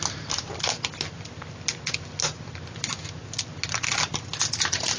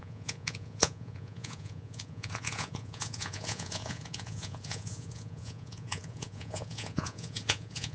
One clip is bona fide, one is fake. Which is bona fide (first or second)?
first